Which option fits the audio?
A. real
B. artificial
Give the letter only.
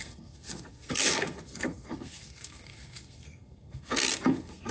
B